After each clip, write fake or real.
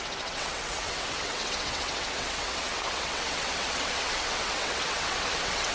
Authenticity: fake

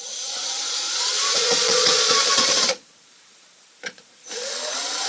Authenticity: fake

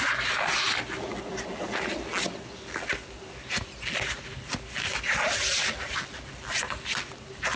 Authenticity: real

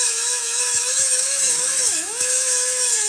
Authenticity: fake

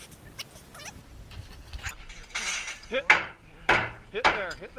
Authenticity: real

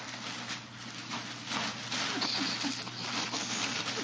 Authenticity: real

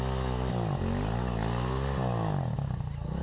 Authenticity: real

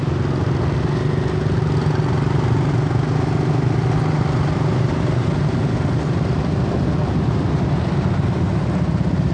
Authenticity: real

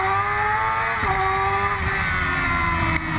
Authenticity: real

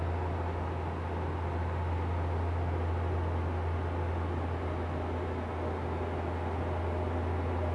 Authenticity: real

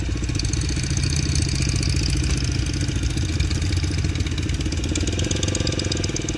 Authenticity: real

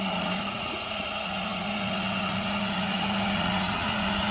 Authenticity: fake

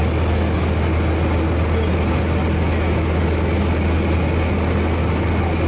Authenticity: real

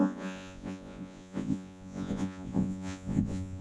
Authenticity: fake